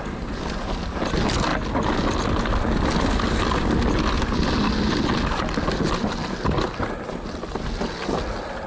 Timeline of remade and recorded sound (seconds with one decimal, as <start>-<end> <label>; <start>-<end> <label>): 0.0-8.7 recorded